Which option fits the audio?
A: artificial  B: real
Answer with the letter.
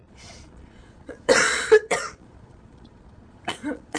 A